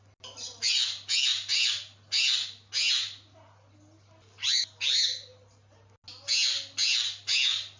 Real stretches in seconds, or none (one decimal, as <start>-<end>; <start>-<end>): 0.0-7.8